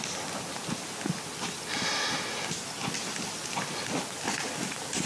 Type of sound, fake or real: real